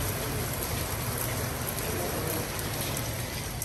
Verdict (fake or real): real